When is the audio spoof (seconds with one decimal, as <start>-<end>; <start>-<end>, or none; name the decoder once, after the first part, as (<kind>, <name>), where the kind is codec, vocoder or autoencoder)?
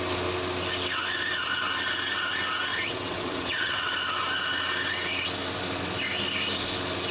2.7-3.9 (vocoder, WaveNeXt)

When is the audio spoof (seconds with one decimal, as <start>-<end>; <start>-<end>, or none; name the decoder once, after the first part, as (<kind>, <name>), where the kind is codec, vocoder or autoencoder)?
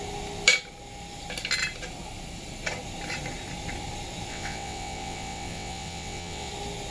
4.3-6.5 (vocoder, WaveNeXt)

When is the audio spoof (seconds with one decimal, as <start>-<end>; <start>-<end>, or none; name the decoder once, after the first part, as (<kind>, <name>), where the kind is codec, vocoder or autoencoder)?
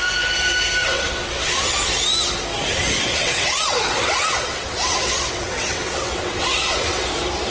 0.8-1.9 (vocoder, WaveNeXt); 3.1-7.1